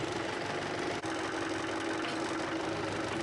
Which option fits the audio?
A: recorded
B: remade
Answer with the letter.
A